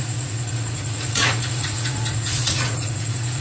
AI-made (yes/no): yes